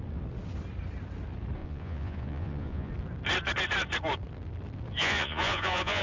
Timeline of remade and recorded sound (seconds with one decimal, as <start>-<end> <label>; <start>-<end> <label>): 0.0-1.6 recorded; 1.6-2.9 remade; 2.9-5.0 recorded; 5.0-6.0 remade

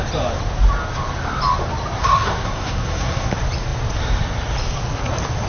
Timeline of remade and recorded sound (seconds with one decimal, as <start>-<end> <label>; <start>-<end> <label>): 0.0-2.0 recorded; 2.0-3.3 remade; 3.3-5.5 recorded